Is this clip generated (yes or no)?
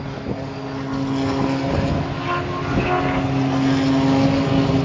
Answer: no